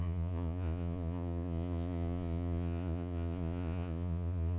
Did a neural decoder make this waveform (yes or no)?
yes